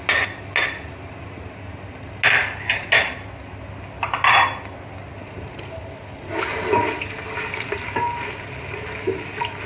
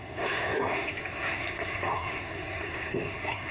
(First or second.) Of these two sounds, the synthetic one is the second